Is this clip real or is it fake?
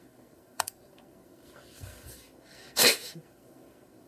fake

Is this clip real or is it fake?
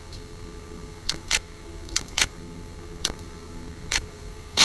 fake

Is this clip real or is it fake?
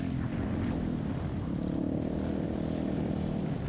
real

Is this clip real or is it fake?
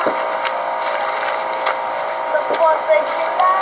real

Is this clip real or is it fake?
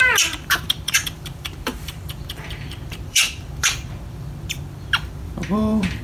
fake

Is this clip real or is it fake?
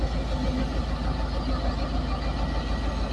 real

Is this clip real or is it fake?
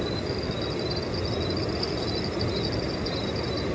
real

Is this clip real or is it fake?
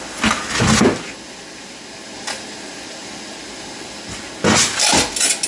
real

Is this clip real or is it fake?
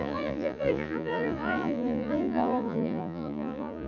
fake